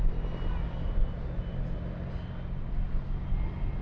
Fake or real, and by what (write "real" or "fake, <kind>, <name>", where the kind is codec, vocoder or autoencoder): real